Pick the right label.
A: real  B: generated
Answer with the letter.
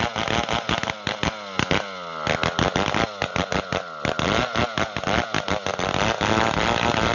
A